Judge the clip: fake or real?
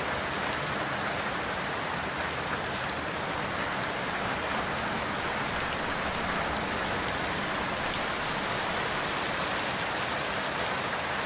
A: real